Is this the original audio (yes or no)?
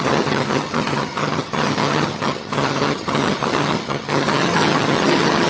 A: no